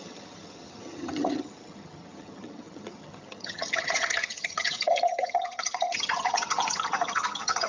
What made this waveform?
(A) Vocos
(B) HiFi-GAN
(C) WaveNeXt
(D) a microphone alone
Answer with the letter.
B